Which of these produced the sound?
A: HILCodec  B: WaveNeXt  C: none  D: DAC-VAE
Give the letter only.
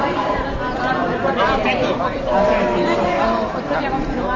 C